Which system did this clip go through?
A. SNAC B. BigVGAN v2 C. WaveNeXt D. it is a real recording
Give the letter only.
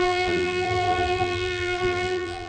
B